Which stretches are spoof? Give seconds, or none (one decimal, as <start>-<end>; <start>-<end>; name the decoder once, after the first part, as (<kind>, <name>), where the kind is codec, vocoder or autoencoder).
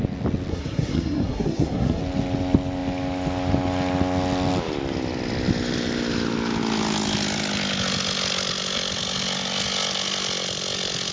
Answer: 0.5-2.0 (codec, SNAC)